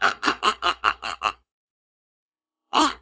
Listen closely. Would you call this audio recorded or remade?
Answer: remade